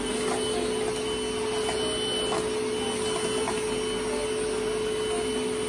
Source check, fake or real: real